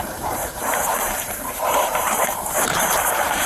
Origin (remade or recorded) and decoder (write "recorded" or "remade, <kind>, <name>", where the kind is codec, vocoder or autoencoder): remade, vocoder, BigVGAN v2